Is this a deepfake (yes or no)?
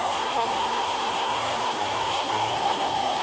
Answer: yes